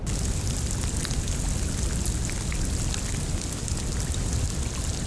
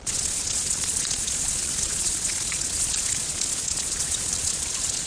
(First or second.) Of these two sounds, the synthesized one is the second